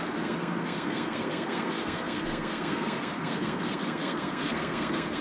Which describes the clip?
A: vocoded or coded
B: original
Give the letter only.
A